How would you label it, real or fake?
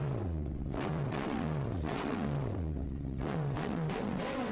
fake